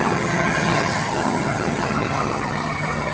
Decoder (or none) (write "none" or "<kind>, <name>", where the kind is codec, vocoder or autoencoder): vocoder, HiFi-GAN